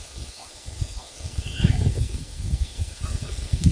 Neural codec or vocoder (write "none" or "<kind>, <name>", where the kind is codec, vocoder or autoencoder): codec, SNAC